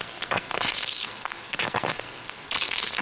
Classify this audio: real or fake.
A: fake